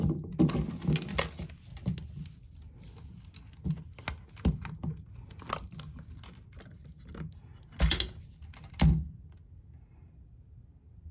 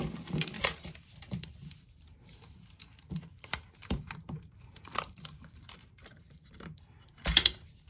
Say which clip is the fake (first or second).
second